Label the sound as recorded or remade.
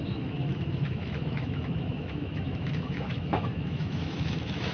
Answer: remade